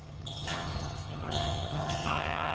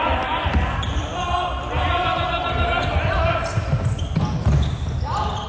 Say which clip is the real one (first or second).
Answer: second